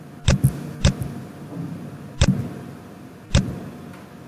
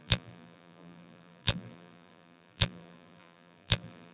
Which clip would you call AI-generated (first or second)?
second